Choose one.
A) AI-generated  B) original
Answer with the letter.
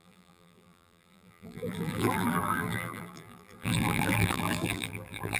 A